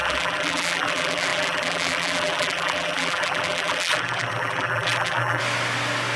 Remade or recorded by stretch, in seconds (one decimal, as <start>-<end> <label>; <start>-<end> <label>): 0.0-5.4 remade; 5.4-6.2 recorded